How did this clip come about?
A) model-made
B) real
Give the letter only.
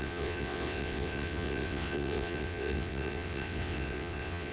A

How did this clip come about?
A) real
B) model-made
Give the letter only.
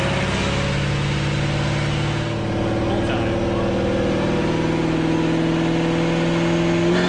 A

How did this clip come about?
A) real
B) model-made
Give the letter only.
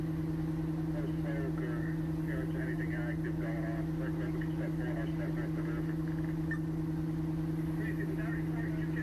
A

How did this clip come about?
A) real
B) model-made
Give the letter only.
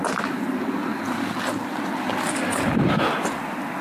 A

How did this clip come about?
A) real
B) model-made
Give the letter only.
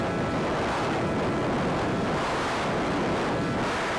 A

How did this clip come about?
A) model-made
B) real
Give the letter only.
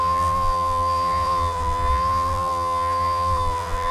A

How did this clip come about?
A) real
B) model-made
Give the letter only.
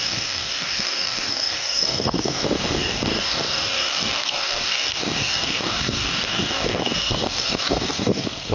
B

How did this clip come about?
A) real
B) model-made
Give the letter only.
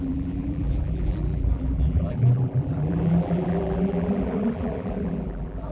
B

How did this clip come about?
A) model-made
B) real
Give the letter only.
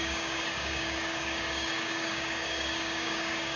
A